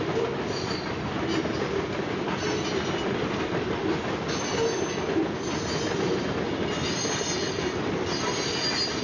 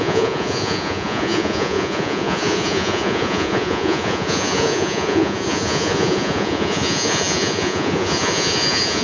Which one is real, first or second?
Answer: first